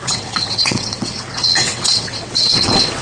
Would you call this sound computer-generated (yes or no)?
yes